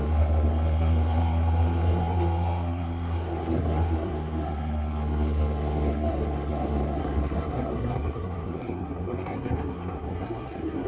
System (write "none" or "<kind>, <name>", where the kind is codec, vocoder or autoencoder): codec, SNAC